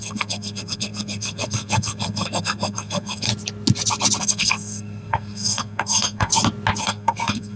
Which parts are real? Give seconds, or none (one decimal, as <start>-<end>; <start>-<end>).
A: 3.3-4.2; 6.3-6.8